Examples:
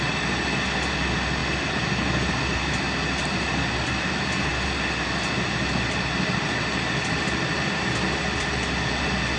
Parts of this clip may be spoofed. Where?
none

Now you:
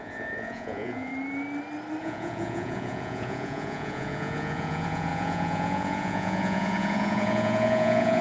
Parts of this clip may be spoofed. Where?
0.0-1.1 (vocoder, Vocos); 2.0-8.2

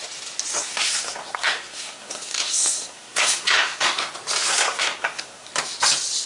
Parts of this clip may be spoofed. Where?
0.6-4.1 (codec, SNAC); 4.5-5.5

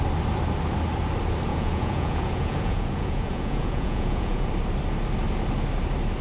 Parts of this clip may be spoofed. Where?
1.5-4.5 (vocoder, Vocos)

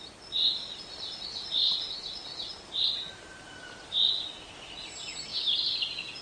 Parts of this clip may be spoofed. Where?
none